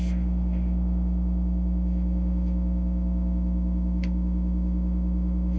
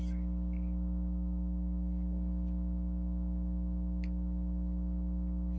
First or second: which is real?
second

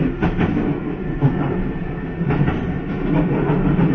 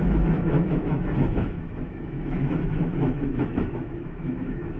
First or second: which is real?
first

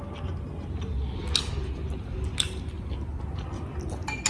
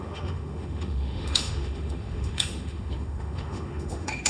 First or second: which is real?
first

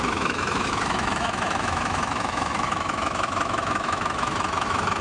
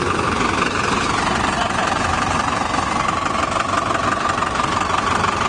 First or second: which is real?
second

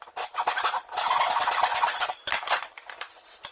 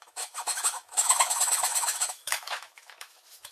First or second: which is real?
first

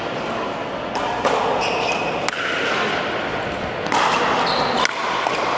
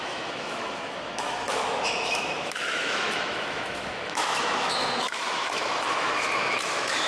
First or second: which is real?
first